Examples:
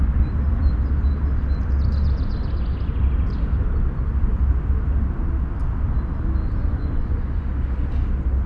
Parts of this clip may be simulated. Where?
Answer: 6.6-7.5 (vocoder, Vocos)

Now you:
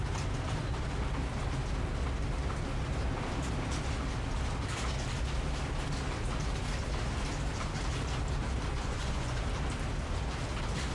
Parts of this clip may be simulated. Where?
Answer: 8.7-9.4 (vocoder, Vocos)

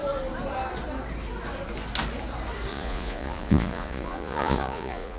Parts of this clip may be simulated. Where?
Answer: 2.7-5.2 (vocoder, Vocos)

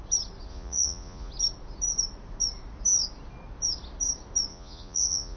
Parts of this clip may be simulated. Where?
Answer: 0.5-1.3 (vocoder, Vocos); 4.5-5.4

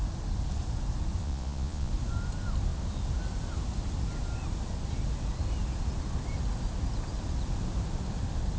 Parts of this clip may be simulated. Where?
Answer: 1.2-1.9 (vocoder, Vocos)

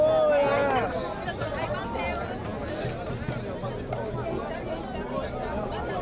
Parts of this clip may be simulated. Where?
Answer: none

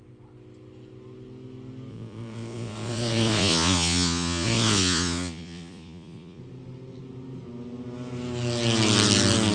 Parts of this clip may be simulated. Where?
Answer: 1.9-6.4 (vocoder, Vocos)